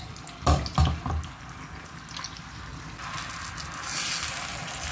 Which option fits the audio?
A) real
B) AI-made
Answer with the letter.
A